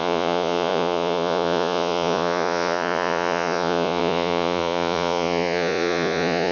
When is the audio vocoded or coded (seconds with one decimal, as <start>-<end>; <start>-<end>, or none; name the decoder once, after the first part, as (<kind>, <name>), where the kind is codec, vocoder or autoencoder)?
0.0-6.5 (vocoder, Vocos)